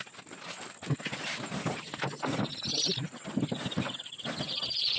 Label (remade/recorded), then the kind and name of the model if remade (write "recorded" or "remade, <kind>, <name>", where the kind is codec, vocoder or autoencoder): recorded